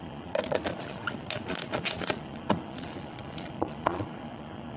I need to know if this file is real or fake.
fake